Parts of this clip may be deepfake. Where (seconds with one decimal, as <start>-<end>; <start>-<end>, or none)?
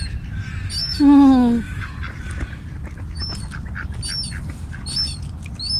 0.8-1.9